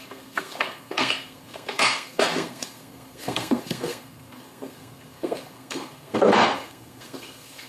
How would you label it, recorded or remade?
remade